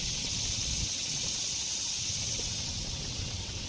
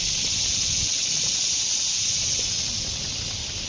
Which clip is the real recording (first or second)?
second